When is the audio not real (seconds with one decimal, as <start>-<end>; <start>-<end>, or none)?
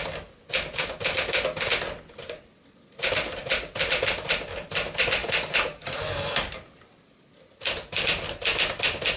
none